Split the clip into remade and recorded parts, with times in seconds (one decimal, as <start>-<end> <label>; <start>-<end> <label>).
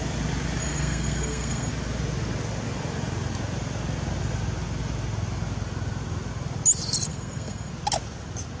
0.0-0.6 recorded; 0.6-1.7 remade; 1.7-7.1 recorded; 7.1-7.7 remade; 7.7-8.6 recorded